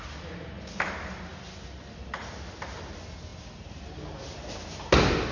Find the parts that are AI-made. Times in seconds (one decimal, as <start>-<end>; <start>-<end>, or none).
none